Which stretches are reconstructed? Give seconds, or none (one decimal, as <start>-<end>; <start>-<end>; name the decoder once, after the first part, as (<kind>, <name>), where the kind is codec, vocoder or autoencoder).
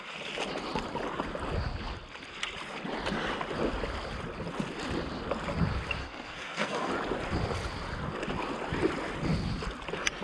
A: 6.0-6.9 (codec, SNAC)